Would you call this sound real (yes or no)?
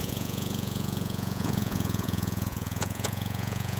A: no